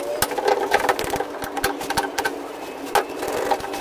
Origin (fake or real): real